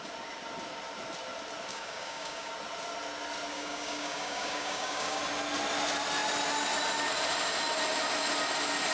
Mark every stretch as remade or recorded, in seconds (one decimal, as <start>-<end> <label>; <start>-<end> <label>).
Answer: 0.0-1.7 recorded; 1.7-2.5 remade; 2.5-3.5 recorded; 3.5-5.2 remade; 5.2-8.9 recorded